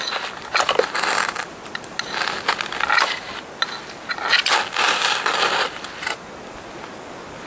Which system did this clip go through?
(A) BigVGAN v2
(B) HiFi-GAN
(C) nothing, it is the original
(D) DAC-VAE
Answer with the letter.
C